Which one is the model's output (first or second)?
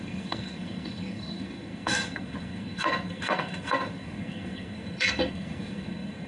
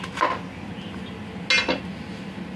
first